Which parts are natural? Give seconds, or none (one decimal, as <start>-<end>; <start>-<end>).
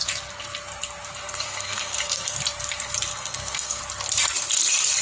0.0-1.2; 2.4-3.1; 3.8-5.0